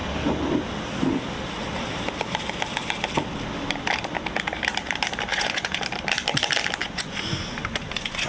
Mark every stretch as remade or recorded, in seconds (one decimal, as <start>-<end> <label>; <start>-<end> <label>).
0.0-5.3 recorded; 5.3-5.8 remade; 5.8-6.8 recorded; 6.8-8.3 remade